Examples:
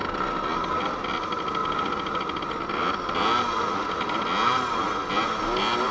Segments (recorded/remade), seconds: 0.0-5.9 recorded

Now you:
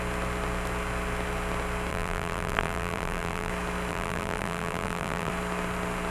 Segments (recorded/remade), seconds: 0.0-1.9 recorded; 1.9-3.5 remade; 3.5-3.9 recorded; 3.9-5.3 remade; 5.3-6.1 recorded

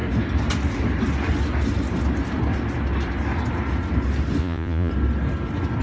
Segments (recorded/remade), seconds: 0.0-4.4 recorded; 4.4-4.9 remade; 4.9-5.8 recorded

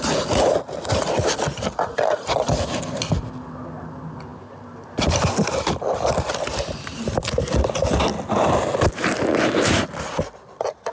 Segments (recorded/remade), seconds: 0.0-10.9 recorded

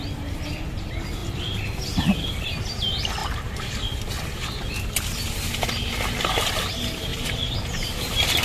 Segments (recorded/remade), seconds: 0.0-7.1 recorded; 7.1-8.0 remade; 8.0-8.4 recorded

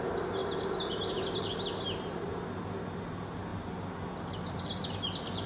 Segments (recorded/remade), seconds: 0.0-5.5 recorded

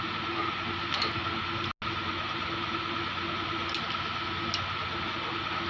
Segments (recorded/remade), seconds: 0.0-5.7 recorded

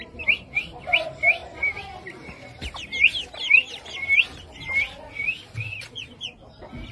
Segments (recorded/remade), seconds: 0.0-6.9 recorded